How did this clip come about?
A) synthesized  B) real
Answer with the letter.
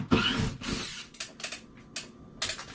B